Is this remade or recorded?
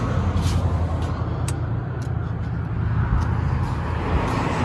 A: recorded